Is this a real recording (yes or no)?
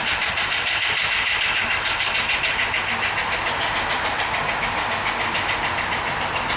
yes